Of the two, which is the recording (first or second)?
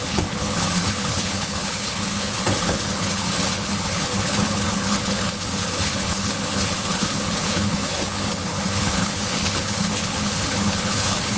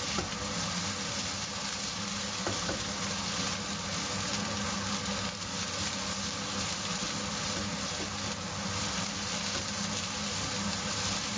second